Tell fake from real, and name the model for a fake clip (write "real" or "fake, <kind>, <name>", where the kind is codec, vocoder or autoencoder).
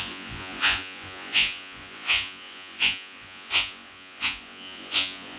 fake, vocoder, Vocos